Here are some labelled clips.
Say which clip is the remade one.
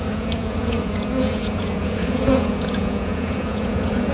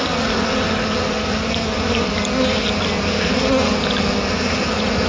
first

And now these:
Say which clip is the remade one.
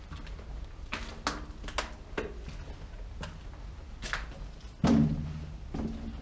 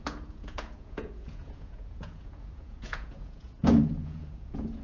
second